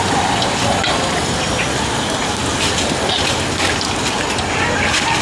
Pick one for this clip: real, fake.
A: real